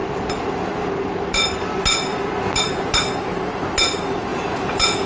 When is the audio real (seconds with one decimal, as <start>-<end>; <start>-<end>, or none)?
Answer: 0.0-4.3